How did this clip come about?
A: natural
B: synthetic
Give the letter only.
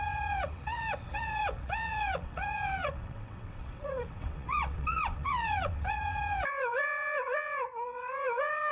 B